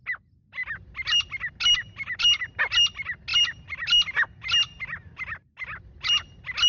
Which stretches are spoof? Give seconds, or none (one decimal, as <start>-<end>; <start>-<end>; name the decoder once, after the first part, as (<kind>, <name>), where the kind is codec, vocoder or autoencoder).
3.3-4.8 (vocoder, BigVGAN v2)